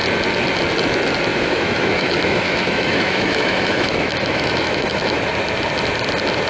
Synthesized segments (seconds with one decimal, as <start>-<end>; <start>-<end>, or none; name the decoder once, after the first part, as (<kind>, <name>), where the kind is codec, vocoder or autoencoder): 1.3-5.2 (autoencoder, DAC-VAE)